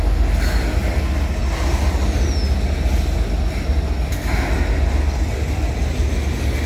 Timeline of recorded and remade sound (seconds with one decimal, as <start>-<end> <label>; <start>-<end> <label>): 0.0-6.7 recorded